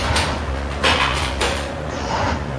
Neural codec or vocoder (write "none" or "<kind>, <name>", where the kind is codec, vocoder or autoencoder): vocoder, Vocos